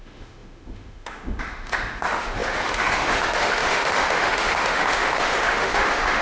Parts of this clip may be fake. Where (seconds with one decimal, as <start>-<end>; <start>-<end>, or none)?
0.0-6.2